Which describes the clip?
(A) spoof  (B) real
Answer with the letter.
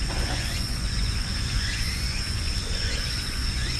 A